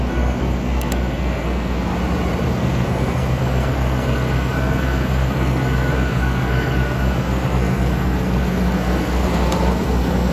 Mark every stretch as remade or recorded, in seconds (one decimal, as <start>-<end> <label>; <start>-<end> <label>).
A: 0.0-1.9 remade; 1.9-2.5 recorded; 2.5-10.3 remade